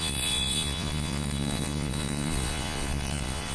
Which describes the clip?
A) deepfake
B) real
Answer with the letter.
A